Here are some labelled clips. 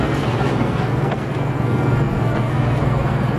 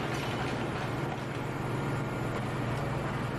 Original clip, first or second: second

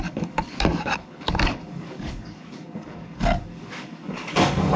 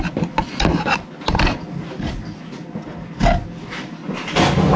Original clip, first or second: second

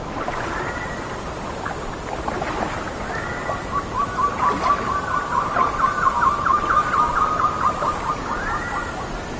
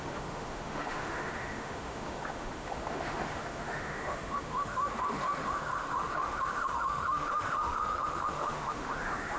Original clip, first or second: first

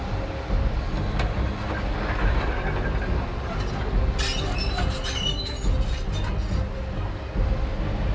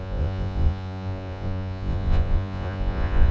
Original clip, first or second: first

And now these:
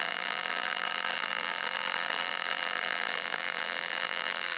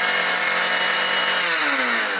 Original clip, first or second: second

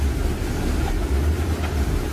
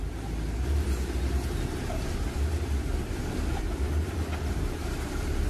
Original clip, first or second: first